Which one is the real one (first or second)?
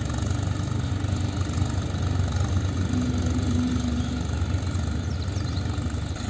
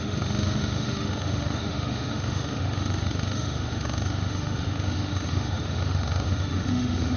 first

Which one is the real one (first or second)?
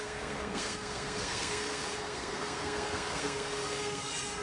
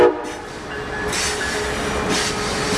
second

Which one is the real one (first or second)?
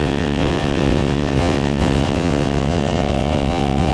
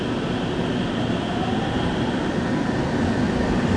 second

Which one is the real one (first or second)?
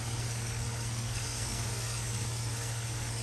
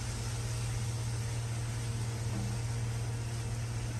second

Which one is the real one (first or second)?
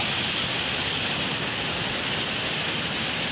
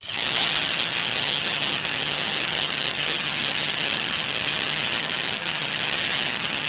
first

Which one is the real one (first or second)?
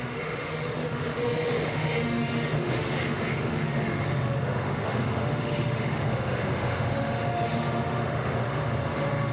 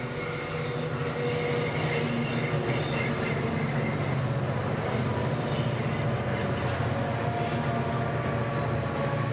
second